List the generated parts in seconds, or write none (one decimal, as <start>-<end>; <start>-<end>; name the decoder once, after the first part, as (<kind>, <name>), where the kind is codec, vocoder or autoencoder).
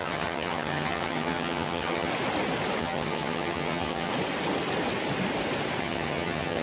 0.0-2.1 (vocoder, HiFi-GAN); 2.8-4.1; 5.8-6.6